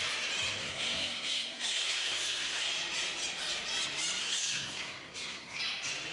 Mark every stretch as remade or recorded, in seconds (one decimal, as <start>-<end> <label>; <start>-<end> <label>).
0.0-0.6 recorded; 0.6-2.7 remade; 2.7-4.2 recorded; 4.2-5.6 remade; 5.6-6.1 recorded